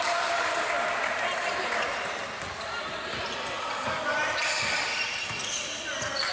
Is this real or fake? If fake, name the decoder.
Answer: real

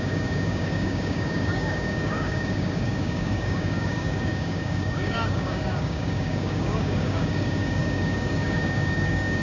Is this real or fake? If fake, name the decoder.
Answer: fake, codec, DAC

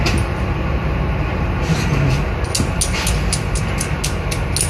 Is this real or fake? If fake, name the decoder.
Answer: real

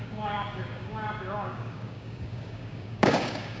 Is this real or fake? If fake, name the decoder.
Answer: fake, codec, DAC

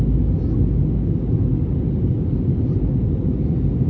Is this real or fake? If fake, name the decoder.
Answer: real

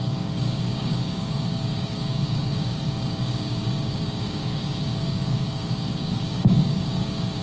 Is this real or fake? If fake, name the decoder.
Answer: fake, codec, DAC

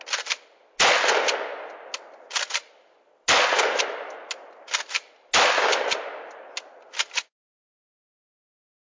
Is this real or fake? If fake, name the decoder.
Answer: real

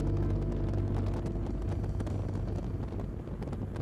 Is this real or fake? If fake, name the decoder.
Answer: real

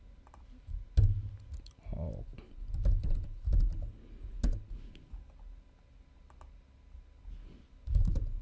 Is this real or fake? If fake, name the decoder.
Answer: real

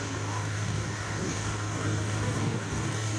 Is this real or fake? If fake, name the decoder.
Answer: fake, codec, DAC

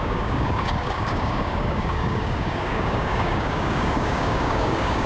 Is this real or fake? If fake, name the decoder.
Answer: fake, codec, DAC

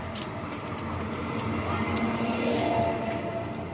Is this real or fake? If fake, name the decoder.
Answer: real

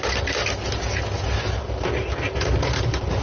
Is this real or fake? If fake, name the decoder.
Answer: real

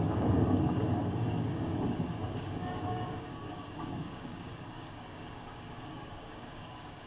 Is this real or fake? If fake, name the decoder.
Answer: fake, codec, DAC